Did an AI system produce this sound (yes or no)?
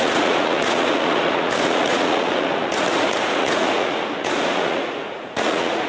yes